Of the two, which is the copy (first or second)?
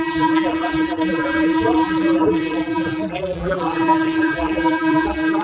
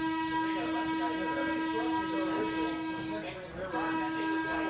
first